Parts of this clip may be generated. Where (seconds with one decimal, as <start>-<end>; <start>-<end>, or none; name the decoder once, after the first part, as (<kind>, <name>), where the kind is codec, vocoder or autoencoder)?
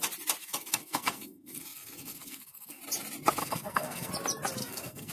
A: 0.4-2.8 (codec, SNAC); 3.4-4.1; 4.6-5.1